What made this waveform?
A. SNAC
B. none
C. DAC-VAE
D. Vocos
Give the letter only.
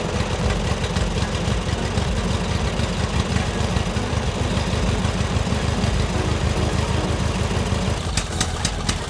B